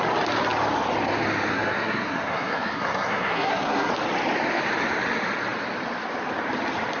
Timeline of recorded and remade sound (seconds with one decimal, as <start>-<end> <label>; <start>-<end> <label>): 0.0-1.5 recorded; 1.5-3.9 remade; 3.9-7.0 recorded